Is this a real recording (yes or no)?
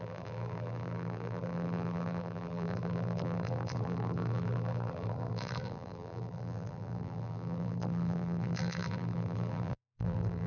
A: no